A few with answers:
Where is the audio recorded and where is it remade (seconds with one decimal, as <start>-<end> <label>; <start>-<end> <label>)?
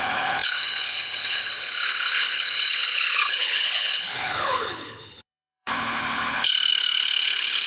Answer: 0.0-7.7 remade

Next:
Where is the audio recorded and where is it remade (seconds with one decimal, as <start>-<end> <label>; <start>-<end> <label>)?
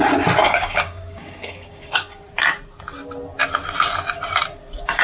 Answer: 0.0-0.4 recorded; 0.4-2.2 remade; 2.2-5.0 recorded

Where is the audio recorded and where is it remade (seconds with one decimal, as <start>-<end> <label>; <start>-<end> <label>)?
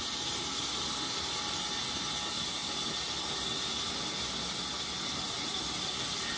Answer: 0.0-6.4 recorded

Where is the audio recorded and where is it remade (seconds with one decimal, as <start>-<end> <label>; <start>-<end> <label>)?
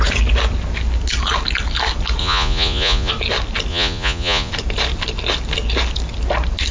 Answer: 0.0-2.2 recorded; 2.2-3.1 remade; 3.1-3.7 recorded; 3.7-4.5 remade; 4.5-6.7 recorded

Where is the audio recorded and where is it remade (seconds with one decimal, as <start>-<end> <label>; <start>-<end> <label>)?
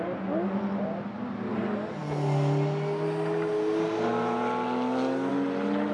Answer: 0.0-5.9 recorded